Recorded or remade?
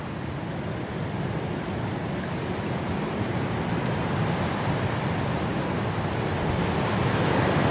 recorded